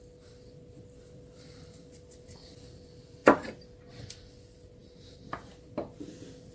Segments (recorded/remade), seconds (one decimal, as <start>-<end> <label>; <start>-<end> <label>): 0.0-3.2 remade; 3.2-3.9 recorded; 3.9-6.5 remade